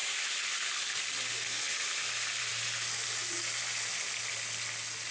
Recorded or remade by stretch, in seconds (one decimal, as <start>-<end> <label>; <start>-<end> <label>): 0.0-5.1 recorded